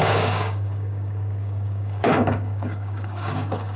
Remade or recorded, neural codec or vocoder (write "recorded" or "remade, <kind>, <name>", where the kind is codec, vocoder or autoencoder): remade, codec, DAC